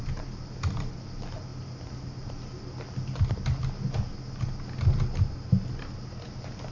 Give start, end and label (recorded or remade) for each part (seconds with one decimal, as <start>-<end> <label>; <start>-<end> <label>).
0.0-6.7 recorded